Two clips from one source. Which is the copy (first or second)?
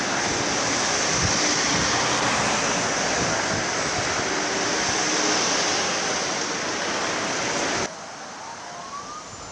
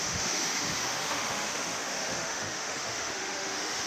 second